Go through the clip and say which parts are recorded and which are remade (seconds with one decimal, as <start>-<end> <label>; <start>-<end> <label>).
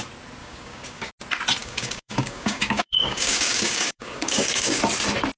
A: 0.0-0.4 recorded; 0.4-1.1 remade; 1.1-1.6 recorded; 1.6-4.8 remade; 4.8-5.4 recorded